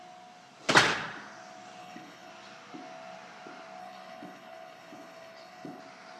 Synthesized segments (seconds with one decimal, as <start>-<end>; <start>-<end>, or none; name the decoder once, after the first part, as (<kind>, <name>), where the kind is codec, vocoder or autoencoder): 1.8-2.3 (codec, HILCodec); 3.8-5.8